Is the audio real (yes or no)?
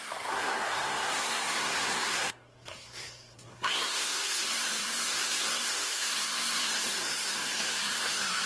no